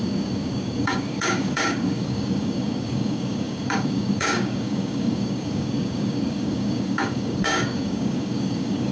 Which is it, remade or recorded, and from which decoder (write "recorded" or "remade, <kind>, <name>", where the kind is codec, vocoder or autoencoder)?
remade, codec, DAC